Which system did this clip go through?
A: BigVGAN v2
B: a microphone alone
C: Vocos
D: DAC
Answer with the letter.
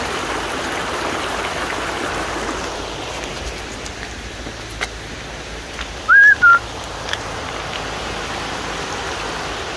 B